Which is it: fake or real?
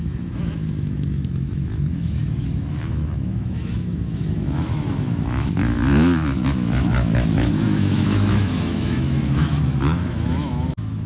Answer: fake